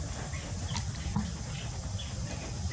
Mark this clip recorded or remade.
recorded